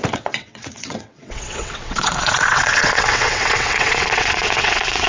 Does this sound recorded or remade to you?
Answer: remade